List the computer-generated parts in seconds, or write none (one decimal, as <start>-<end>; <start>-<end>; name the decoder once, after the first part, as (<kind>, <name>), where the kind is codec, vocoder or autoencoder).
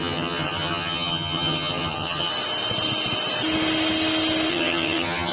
0.0-2.3 (vocoder, HiFi-GAN); 4.5-5.3